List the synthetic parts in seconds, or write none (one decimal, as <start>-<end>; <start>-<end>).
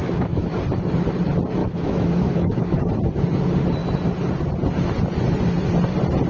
0.0-0.6; 1.6-2.8